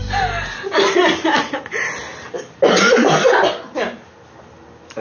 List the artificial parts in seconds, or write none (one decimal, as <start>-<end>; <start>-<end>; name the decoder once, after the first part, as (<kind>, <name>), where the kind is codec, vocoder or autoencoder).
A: none